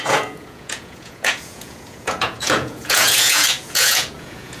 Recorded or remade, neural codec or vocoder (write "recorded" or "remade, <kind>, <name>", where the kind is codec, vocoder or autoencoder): remade, vocoder, Vocos